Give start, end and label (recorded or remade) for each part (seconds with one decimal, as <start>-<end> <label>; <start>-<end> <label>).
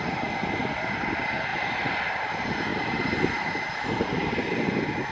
0.0-5.1 recorded